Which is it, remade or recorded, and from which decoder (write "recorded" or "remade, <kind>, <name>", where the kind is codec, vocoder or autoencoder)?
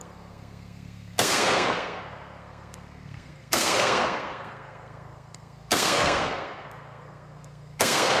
remade, codec, SNAC